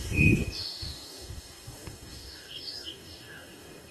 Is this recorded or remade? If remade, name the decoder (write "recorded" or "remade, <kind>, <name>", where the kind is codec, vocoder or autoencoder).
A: remade, codec, DAC